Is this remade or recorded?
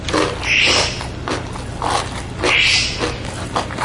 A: recorded